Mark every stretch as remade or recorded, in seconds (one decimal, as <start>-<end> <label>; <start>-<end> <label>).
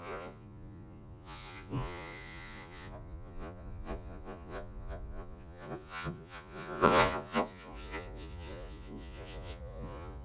0.0-10.2 remade